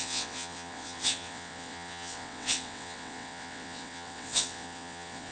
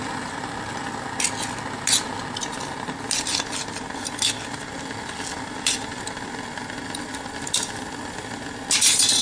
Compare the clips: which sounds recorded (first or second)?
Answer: second